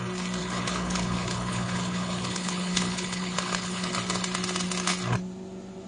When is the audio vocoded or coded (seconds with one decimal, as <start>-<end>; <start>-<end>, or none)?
0.4-3.9